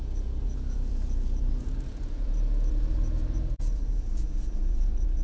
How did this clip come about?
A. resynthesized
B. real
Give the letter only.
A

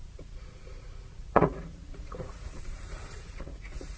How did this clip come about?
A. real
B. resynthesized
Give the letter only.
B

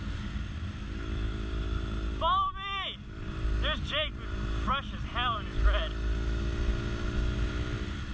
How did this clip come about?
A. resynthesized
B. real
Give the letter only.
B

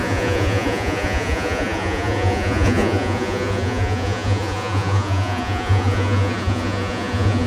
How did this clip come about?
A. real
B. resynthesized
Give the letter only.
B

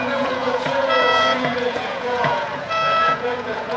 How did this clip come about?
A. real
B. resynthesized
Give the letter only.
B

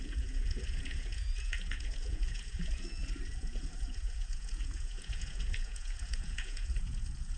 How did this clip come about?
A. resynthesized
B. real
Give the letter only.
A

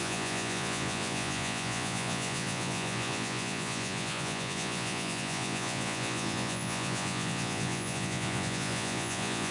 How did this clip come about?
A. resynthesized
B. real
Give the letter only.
A